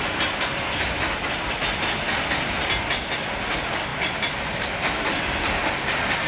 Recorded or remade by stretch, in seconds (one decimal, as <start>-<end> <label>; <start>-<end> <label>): 0.0-6.3 recorded